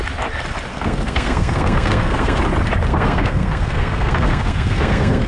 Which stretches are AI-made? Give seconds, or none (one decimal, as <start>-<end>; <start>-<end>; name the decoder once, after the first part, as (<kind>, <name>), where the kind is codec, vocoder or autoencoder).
0.7-2.4 (codec, SNAC); 2.9-5.3